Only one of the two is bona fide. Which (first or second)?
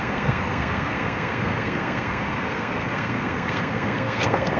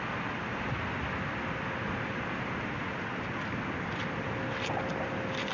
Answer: second